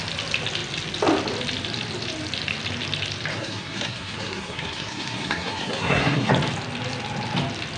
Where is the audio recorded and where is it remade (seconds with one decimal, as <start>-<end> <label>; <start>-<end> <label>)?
0.0-3.3 recorded; 3.3-6.3 remade; 6.3-7.8 recorded